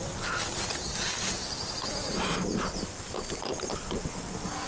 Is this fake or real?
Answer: real